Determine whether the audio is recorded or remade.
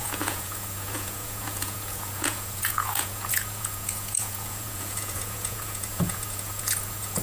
remade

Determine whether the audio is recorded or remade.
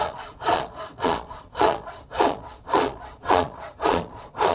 remade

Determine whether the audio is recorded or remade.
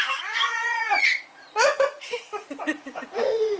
remade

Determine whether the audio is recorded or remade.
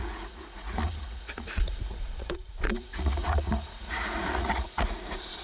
remade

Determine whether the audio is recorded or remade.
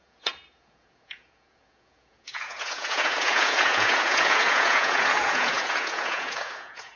remade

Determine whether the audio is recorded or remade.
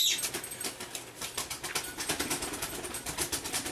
recorded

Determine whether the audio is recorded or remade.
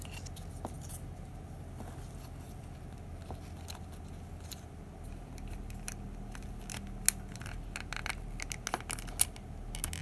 recorded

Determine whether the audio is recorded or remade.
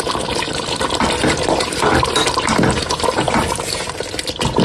recorded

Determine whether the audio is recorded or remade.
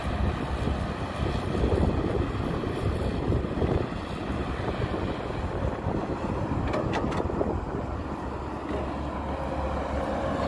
recorded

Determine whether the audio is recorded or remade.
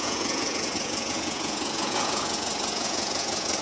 remade